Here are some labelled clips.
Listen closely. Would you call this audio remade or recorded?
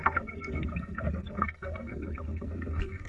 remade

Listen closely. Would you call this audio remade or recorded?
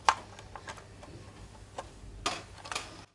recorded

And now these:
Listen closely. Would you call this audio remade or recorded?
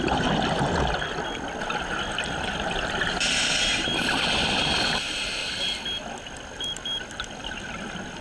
recorded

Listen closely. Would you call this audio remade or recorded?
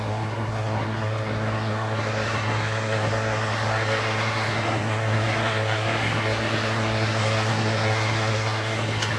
remade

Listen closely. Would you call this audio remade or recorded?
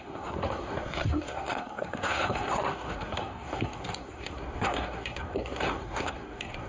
remade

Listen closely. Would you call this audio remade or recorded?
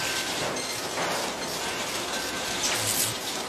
recorded